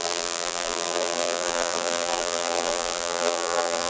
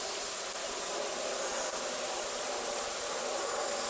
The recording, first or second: second